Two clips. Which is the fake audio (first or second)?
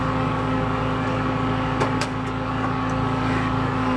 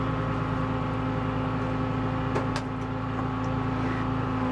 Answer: first